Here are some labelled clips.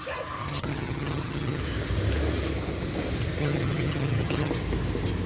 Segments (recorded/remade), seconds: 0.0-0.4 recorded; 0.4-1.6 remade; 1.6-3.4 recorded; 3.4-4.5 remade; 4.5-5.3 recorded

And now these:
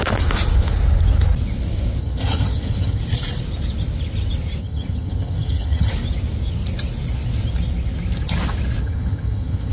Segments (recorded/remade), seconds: 0.0-2.0 recorded; 2.0-3.0 remade; 3.0-4.6 recorded; 4.6-5.9 remade; 5.9-8.8 recorded; 8.8-9.7 remade

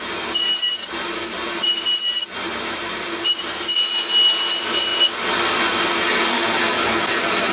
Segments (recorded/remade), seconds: 0.0-7.5 recorded

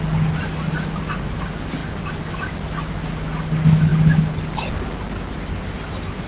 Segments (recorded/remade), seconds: 0.0-6.3 recorded

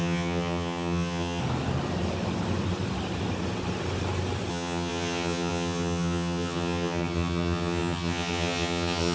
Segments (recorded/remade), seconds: 0.0-1.4 remade; 1.4-4.5 recorded; 4.5-9.1 remade

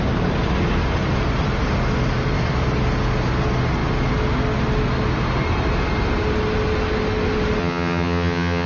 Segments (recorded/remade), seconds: 0.0-7.6 recorded; 7.6-8.7 remade

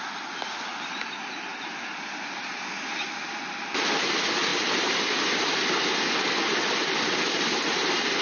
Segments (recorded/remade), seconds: 0.0-8.2 recorded